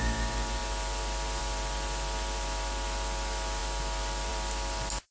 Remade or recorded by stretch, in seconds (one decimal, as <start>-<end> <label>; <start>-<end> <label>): 0.0-5.1 recorded